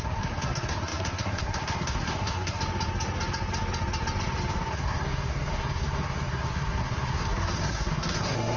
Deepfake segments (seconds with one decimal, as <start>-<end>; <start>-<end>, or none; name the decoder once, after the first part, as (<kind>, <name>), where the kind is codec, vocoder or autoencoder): 0.0-2.6 (codec, SNAC); 4.7-8.6